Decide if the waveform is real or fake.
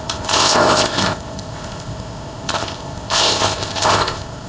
fake